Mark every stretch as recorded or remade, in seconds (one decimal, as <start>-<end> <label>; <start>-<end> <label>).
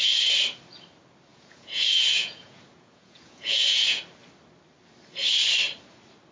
0.0-1.3 recorded; 1.3-4.0 remade; 4.0-6.3 recorded